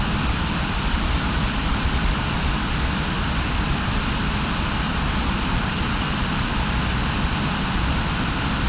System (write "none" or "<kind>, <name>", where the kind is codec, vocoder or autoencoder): none